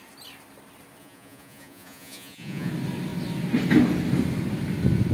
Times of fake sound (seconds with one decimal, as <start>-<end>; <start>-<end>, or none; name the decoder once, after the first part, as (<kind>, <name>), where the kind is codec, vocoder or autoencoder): 1.0-2.7 (vocoder, Vocos)